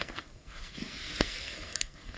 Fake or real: fake